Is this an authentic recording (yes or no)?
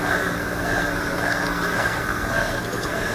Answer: no